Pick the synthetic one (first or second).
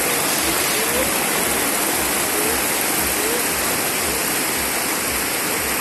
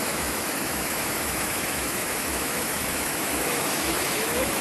second